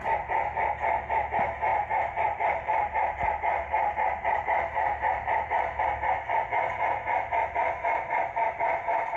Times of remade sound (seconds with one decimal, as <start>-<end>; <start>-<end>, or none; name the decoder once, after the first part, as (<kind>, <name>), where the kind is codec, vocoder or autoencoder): 1.7-5.8 (vocoder, BigVGAN v2)